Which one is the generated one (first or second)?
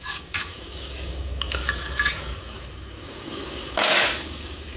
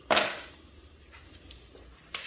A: first